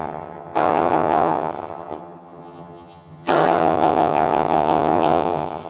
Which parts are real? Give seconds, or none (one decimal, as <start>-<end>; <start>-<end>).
none